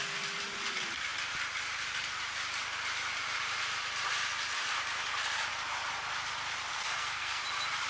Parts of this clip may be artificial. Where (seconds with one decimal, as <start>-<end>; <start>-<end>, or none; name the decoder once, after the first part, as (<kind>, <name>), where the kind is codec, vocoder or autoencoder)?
6.7-7.4 (codec, SNAC)